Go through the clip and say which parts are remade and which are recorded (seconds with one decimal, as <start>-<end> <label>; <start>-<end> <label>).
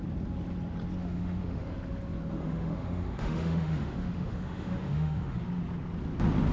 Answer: 0.0-1.0 recorded; 1.0-1.8 remade; 1.8-2.4 recorded; 2.4-5.4 remade; 5.4-6.5 recorded